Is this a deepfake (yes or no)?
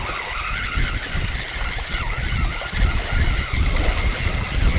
no